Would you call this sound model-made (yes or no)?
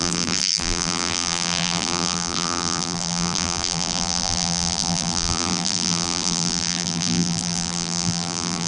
yes